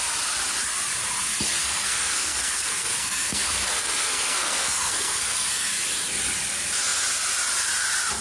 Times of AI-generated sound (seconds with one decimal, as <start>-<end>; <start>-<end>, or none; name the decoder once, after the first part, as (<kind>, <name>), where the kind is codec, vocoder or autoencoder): 1.6-5.7 (codec, SNAC)